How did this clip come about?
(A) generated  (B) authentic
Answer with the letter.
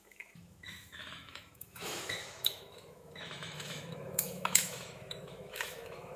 A